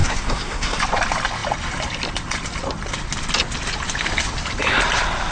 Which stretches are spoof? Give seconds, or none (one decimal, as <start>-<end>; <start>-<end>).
0.0-0.8